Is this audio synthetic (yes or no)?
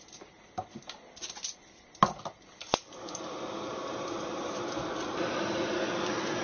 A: no